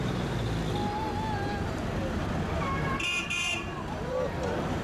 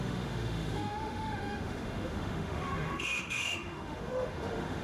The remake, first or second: second